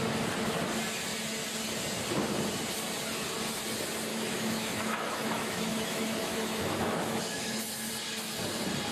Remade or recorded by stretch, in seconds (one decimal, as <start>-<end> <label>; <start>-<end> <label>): 0.0-4.1 recorded; 4.1-7.9 remade; 7.9-8.9 recorded